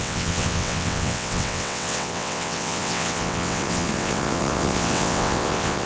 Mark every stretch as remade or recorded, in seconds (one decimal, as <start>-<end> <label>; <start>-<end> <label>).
0.0-5.9 remade

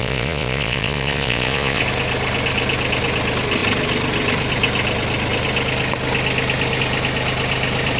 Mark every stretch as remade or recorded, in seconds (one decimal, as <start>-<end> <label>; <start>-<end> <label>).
0.0-1.8 remade; 1.8-8.0 recorded

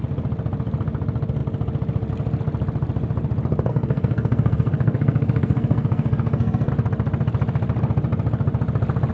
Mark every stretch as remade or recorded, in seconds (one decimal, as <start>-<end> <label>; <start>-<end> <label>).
0.0-3.7 recorded; 3.7-6.7 remade; 6.7-9.1 recorded

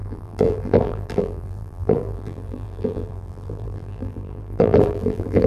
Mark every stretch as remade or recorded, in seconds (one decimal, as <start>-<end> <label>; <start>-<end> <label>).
0.0-5.5 remade

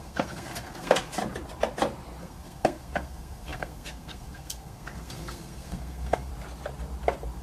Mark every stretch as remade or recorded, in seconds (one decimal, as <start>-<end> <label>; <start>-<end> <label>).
0.0-1.2 remade; 1.2-2.2 recorded; 2.2-6.3 remade; 6.3-7.4 recorded

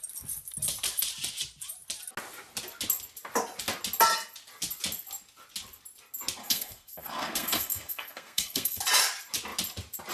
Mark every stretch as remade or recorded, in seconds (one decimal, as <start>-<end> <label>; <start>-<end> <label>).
0.0-6.4 recorded; 6.4-8.8 remade; 8.8-10.1 recorded

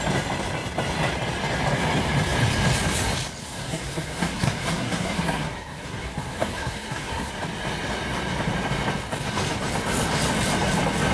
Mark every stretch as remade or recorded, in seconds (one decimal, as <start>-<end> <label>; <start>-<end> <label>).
0.0-3.4 recorded; 3.4-7.3 remade; 7.3-11.1 recorded